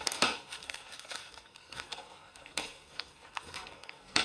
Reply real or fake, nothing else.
fake